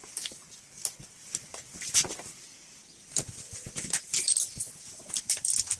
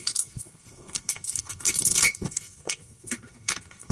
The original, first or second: first